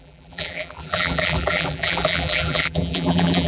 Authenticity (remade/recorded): remade